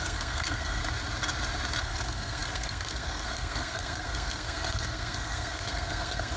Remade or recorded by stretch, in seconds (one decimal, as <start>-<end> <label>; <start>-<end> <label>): 0.0-0.8 remade; 0.8-1.8 recorded; 1.8-6.4 remade